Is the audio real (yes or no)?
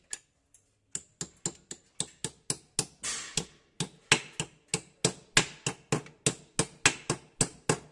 yes